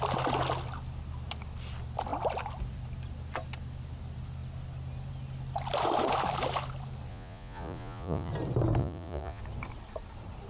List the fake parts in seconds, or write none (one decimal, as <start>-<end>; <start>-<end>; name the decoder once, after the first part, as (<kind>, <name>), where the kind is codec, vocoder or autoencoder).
7.1-8.3 (vocoder, Vocos); 8.8-9.4